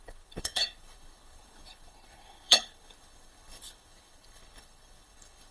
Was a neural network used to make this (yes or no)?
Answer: yes